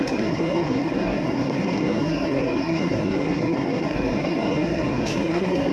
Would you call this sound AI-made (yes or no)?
yes